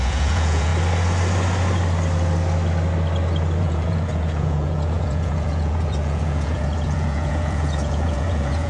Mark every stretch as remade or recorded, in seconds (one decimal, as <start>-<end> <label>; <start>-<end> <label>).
0.0-0.7 remade; 0.7-3.6 recorded; 3.6-8.7 remade